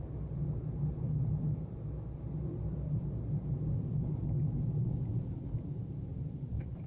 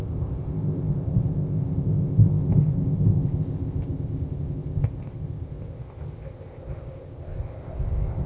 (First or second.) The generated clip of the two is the second